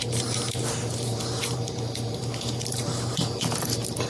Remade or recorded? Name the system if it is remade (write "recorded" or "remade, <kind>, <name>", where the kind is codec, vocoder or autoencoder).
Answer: remade, vocoder, BigVGAN v2